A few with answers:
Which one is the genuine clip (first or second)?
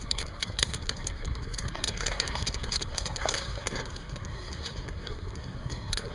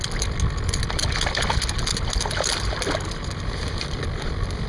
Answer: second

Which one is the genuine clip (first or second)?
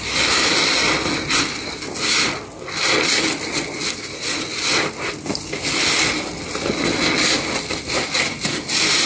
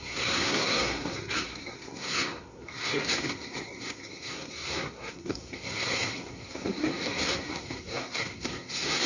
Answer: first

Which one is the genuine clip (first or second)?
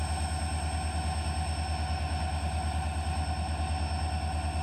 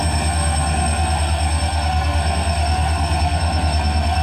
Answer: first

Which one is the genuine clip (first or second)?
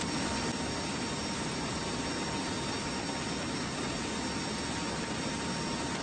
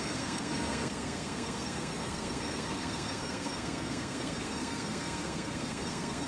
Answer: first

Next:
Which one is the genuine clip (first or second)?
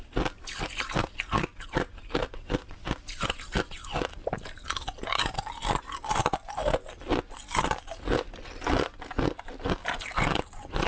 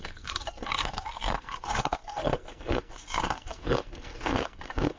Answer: first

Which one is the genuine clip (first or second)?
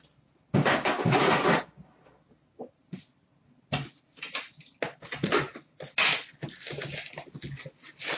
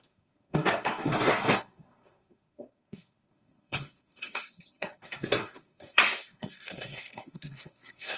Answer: first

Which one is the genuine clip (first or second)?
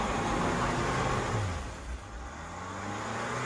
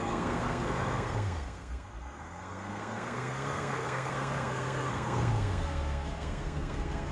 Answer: first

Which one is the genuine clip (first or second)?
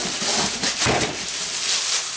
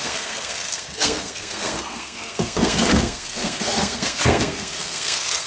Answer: first